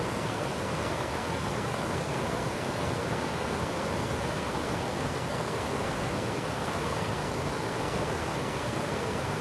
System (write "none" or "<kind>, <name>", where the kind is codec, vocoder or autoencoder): codec, SNAC